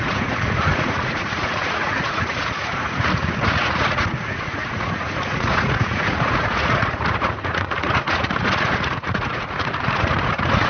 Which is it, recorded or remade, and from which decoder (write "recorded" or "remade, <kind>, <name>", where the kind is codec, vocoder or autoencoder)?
remade, vocoder, Vocos